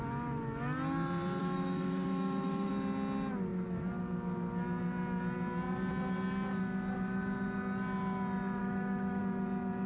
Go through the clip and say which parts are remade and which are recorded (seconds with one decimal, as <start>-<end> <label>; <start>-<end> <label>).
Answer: 0.0-1.4 recorded; 1.4-2.7 remade; 2.7-8.6 recorded; 8.6-9.2 remade; 9.2-9.9 recorded